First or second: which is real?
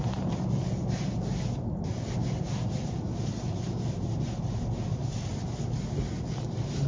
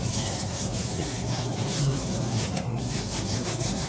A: first